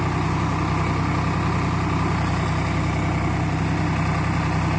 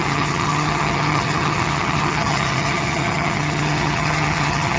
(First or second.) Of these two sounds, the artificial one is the second